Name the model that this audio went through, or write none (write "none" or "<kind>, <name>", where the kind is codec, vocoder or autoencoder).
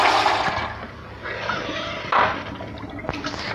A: none